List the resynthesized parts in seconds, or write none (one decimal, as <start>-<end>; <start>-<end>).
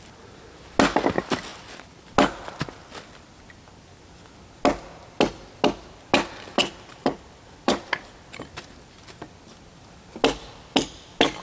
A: 6.6-7.8